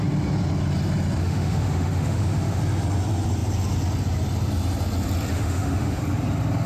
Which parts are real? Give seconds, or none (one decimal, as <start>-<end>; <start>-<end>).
0.0-1.2; 2.6-5.3; 6.0-6.7